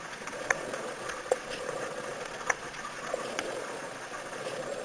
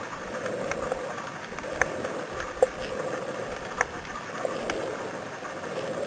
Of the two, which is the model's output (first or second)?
first